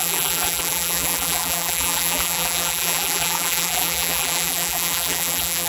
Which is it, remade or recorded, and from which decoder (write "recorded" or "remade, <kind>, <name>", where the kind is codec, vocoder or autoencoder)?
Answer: remade, vocoder, BigVGAN v2